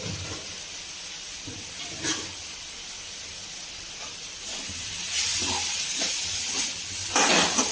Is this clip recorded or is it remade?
recorded